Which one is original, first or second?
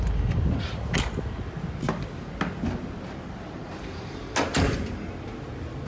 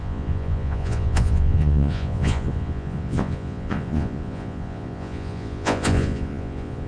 first